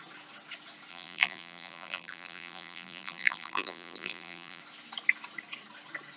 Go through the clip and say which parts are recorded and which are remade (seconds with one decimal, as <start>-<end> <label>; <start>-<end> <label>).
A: 0.0-0.9 recorded; 0.9-4.6 remade; 4.6-6.2 recorded